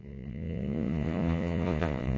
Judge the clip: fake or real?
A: fake